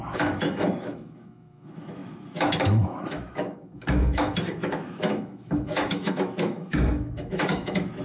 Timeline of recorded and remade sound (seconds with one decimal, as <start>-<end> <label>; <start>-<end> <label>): 0.0-8.0 remade